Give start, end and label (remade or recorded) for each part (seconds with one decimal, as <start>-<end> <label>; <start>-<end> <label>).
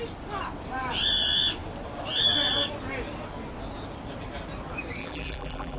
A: 0.0-5.0 recorded; 5.0-5.8 remade